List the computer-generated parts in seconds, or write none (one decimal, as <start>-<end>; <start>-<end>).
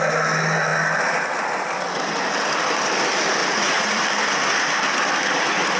3.4-4.0